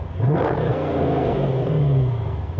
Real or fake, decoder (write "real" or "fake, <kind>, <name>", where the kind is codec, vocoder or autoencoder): fake, codec, SNAC